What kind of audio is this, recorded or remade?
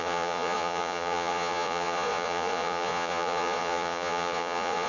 remade